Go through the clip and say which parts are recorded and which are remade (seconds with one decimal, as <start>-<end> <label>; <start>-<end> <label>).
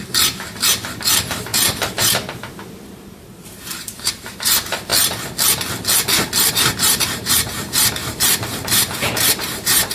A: 0.0-4.9 remade; 4.9-6.5 recorded; 6.5-9.9 remade